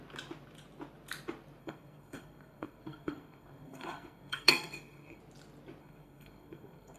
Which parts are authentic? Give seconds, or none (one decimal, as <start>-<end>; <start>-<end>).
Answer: 0.0-1.6; 5.2-5.8